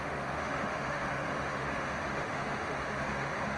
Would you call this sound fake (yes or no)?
yes